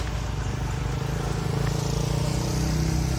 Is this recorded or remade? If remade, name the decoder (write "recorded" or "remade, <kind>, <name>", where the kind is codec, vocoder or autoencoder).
recorded